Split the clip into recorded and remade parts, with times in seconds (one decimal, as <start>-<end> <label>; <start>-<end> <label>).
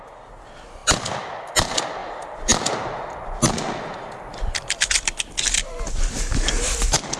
0.0-7.2 recorded